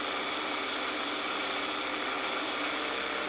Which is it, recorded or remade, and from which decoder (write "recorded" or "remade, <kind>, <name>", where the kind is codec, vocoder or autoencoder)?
recorded